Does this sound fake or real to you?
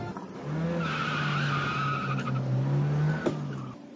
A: real